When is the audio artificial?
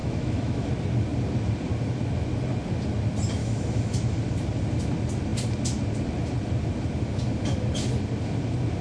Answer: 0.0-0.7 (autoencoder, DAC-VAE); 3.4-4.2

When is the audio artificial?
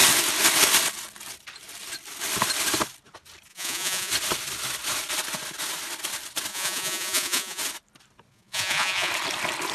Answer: 3.5-4.1 (vocoder, Vocos); 6.5-7.6; 8.3-9.1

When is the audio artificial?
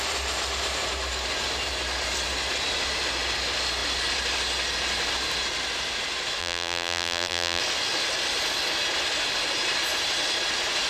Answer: 6.4-7.6 (vocoder, BigVGAN v2)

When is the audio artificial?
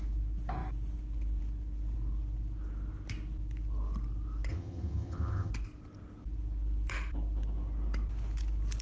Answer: 4.5-5.5 (vocoder, HiFi-GAN)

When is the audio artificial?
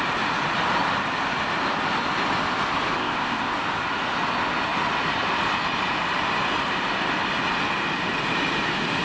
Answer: 3.0-3.5 (codec, ZipCodec)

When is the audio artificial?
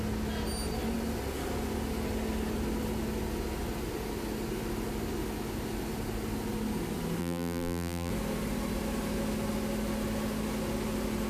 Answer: 7.2-8.1 (vocoder, BigVGAN v2)